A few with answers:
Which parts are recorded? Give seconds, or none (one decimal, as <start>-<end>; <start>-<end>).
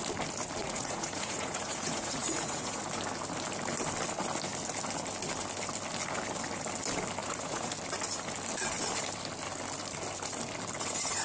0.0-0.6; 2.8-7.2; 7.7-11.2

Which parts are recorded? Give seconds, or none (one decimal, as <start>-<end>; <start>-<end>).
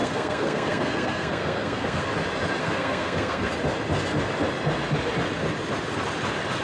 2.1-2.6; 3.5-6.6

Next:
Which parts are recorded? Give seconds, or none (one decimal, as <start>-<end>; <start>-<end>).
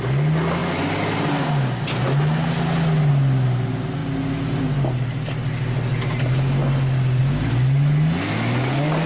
0.0-9.1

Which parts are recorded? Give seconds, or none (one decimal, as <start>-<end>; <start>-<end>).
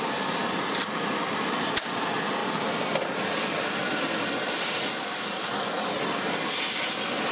0.0-7.3